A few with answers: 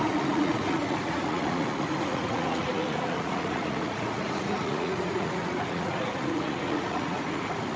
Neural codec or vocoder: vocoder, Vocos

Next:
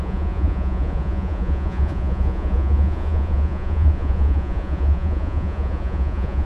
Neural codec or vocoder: vocoder, Vocos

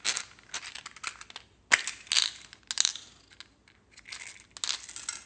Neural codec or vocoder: none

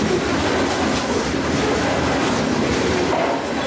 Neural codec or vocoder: none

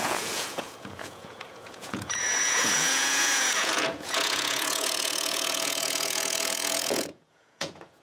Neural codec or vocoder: vocoder, Vocos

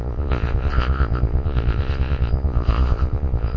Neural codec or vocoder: vocoder, Vocos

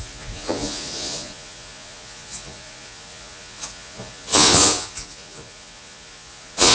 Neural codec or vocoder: vocoder, Vocos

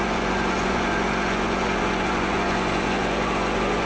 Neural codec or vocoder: vocoder, Vocos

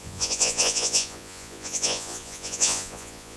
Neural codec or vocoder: vocoder, Vocos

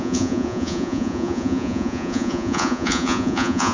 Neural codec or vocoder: vocoder, Vocos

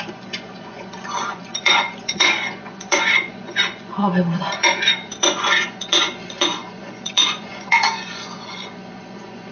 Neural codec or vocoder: vocoder, Vocos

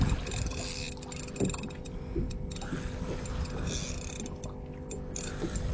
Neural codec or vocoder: none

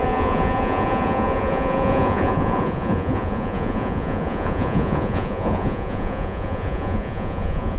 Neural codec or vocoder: vocoder, Vocos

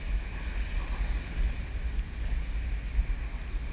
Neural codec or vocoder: none